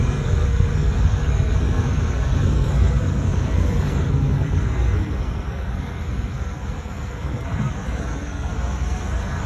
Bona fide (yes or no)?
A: no